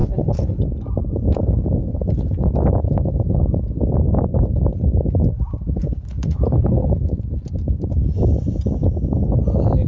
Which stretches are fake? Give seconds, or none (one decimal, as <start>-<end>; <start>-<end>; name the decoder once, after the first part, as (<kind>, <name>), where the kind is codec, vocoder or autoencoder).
0.0-0.6 (codec, HILCodec); 5.8-7.0